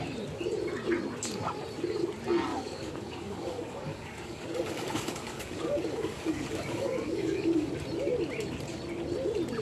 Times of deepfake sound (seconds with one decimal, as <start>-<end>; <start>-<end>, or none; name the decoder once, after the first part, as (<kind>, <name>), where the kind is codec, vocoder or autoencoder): 2.5-7.7 (codec, DAC)